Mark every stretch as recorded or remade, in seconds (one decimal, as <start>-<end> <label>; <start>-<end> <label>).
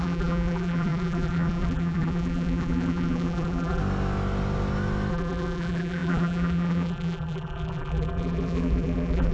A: 0.0-3.8 remade; 3.8-5.1 recorded; 5.1-9.3 remade